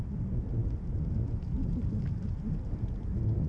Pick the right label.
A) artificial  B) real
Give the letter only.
B